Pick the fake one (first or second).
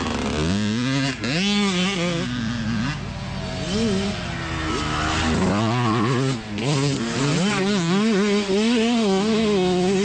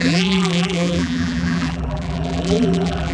second